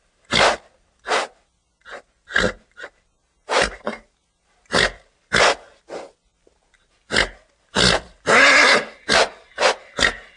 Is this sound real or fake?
real